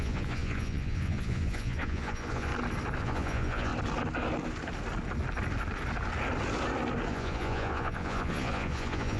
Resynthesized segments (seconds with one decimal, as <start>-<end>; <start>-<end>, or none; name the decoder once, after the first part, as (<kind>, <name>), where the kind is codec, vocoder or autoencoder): 0.0-2.5 (vocoder, Vocos); 3.0-3.7; 7.1-9.2